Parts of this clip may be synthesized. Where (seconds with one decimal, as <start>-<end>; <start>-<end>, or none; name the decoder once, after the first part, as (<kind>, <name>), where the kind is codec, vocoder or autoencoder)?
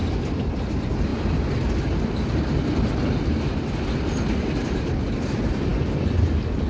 none